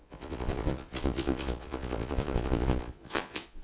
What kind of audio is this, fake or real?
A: fake